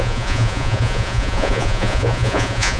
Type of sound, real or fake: fake